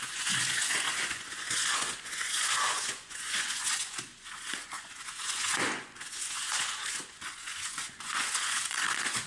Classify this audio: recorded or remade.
remade